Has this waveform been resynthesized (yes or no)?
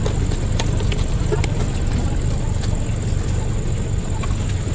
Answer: no